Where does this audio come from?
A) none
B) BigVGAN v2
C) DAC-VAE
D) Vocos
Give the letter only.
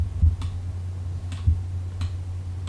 A